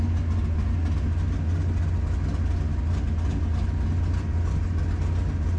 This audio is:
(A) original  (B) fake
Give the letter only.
A